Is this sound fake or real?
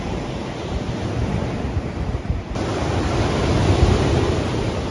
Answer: real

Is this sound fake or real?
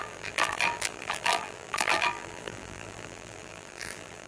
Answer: fake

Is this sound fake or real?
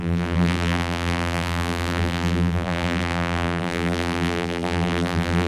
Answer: fake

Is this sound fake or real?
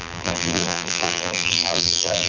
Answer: fake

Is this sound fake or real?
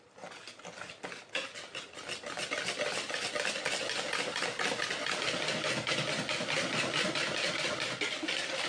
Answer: real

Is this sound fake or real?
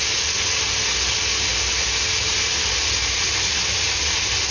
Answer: real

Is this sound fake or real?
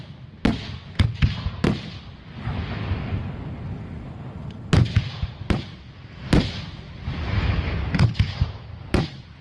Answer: real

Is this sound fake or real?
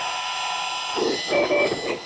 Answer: real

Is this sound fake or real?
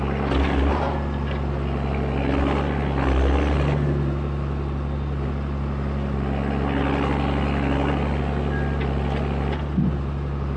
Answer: real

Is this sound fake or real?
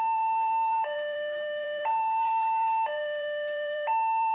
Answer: fake